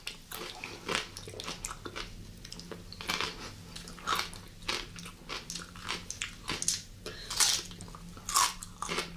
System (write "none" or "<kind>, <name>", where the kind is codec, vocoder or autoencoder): none